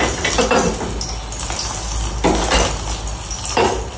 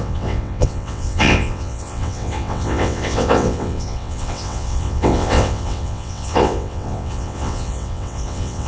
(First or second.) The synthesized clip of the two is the second